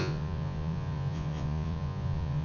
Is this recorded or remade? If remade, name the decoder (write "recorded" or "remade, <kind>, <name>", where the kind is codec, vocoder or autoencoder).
remade, vocoder, Vocos